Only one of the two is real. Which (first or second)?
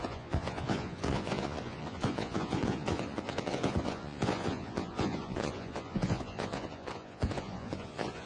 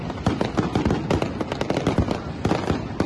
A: second